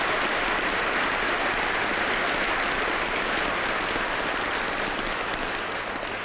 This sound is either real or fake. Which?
real